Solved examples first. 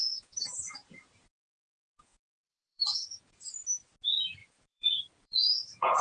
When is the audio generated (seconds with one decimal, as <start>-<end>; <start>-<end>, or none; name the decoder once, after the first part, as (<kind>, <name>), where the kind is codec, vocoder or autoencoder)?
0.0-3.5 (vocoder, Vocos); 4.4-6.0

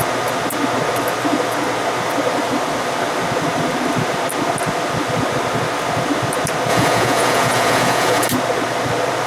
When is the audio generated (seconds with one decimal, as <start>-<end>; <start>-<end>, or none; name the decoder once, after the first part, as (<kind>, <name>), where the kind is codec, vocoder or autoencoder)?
6.7-8.3 (vocoder, Vocos)

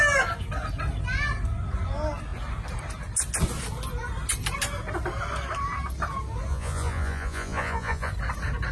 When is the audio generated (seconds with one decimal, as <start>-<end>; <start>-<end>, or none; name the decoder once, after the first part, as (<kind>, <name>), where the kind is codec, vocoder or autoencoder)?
6.5-8.1 (vocoder, Vocos)